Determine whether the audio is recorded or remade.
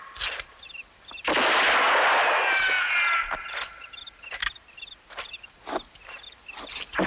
recorded